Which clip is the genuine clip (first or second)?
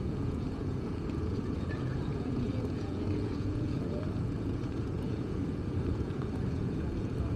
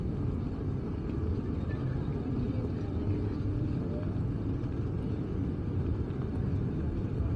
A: second